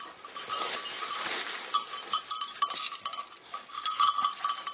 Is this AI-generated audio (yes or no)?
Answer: no